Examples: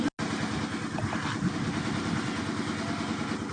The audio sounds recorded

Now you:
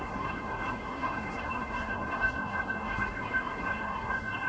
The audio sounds remade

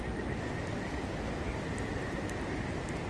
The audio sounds recorded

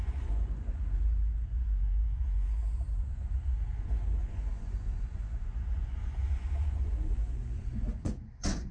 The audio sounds remade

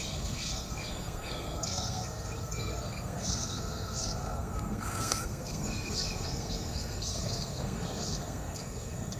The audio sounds remade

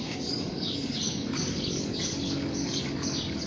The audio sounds remade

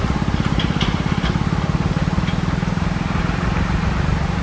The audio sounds recorded